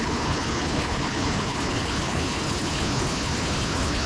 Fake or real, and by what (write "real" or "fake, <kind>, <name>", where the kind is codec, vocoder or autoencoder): fake, codec, HILCodec